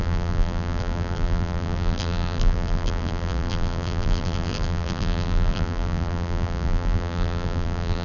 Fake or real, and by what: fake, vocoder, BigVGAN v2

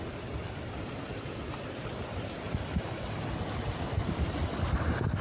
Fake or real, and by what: real